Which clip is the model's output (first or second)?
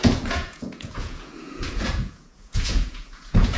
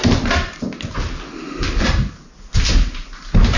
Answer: first